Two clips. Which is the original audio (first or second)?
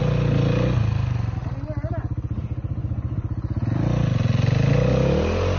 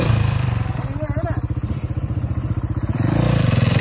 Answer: first